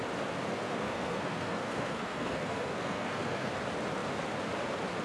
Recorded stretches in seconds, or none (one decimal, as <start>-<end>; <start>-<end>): 0.0-0.5; 3.5-5.0